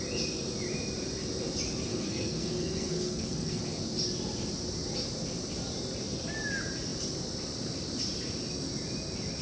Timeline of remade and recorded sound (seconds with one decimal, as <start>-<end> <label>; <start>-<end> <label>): 0.0-1.9 recorded; 1.9-3.6 remade; 3.6-9.4 recorded